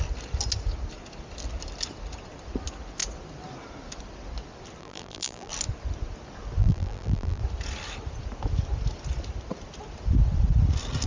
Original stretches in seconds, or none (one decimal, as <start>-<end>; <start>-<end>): 0.0-4.8; 5.5-6.6; 7.4-11.1